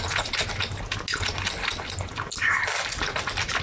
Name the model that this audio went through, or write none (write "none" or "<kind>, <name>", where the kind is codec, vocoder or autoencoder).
none